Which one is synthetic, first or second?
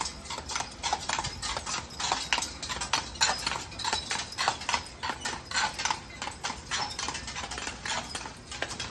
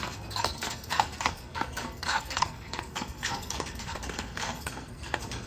second